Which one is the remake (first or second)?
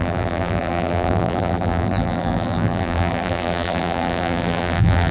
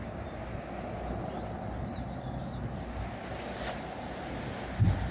first